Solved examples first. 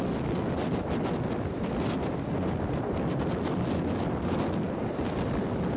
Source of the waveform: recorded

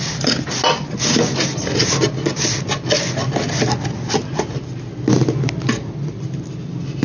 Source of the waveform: recorded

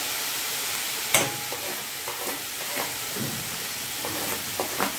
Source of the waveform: recorded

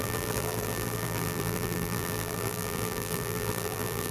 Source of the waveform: remade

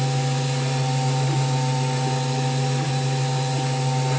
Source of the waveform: recorded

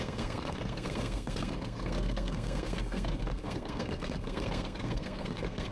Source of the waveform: remade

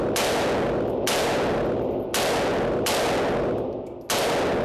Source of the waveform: recorded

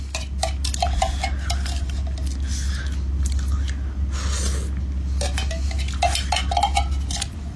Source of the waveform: recorded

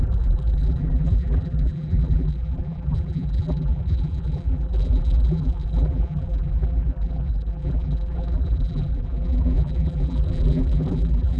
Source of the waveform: remade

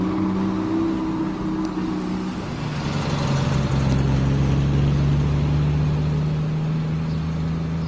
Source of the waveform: recorded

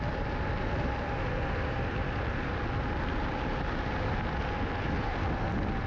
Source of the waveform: recorded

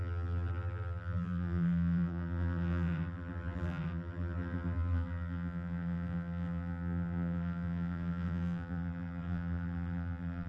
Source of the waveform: remade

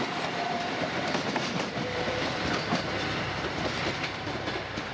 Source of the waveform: remade